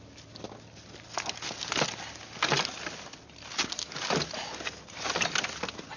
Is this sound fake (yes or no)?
no